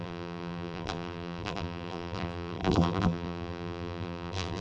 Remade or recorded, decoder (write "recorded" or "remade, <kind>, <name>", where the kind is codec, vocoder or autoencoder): remade, vocoder, BigVGAN v2